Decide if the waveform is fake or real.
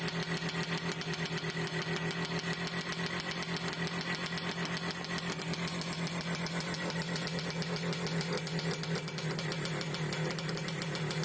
real